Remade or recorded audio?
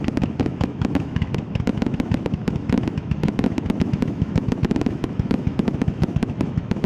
remade